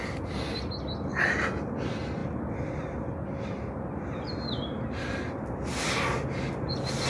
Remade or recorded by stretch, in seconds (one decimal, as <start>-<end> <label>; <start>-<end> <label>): 0.0-7.1 recorded